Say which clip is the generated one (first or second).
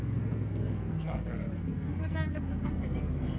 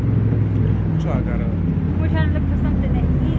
first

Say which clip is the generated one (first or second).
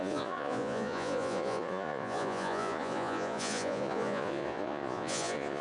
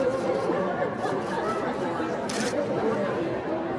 first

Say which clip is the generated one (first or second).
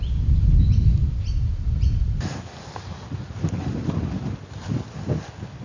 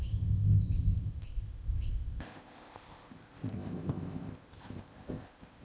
second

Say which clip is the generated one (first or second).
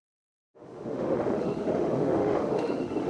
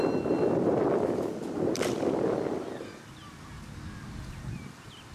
first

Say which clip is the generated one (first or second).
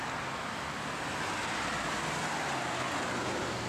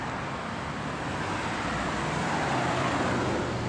second